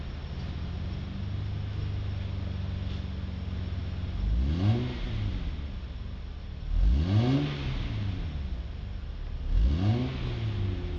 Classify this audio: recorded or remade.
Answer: recorded